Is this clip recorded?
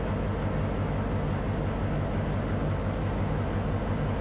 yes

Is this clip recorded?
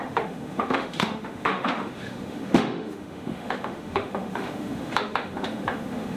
no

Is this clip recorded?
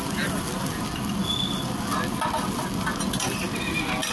yes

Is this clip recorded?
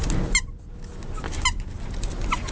yes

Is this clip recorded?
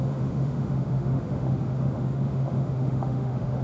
no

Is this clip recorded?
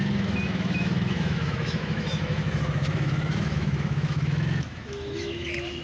no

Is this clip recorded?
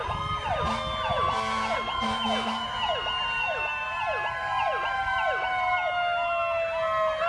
yes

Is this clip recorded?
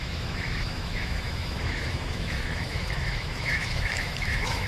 no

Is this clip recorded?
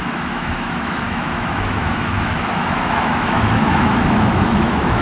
no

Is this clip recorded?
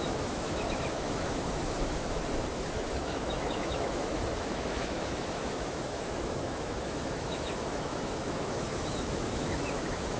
no